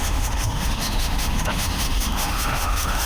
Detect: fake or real fake